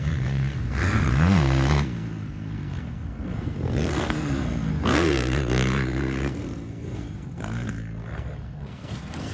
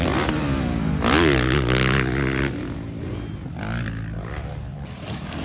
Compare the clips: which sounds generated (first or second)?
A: first